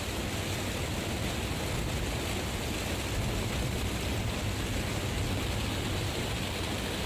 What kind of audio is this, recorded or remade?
recorded